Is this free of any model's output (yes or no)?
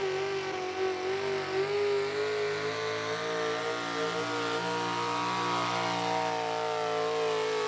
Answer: yes